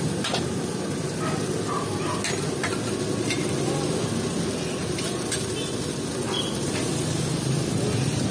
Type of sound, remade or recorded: recorded